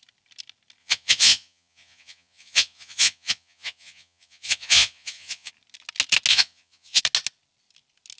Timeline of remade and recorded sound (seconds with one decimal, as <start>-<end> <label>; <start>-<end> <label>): 0.0-0.8 recorded; 0.8-5.5 remade; 5.5-6.3 recorded; 6.3-7.0 remade; 7.0-8.2 recorded